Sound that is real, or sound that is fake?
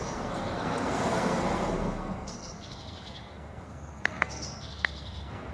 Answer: fake